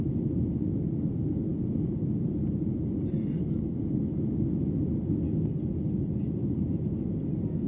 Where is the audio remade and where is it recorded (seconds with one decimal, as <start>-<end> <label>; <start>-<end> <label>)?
0.0-7.7 recorded